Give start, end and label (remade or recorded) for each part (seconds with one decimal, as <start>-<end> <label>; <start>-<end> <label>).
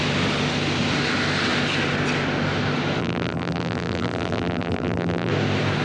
0.0-3.0 recorded; 3.0-5.3 remade; 5.3-5.8 recorded